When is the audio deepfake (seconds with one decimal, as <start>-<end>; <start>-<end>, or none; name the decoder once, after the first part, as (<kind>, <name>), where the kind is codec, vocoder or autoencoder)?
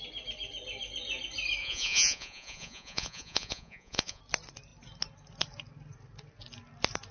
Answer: 1.6-4.2 (vocoder, Vocos)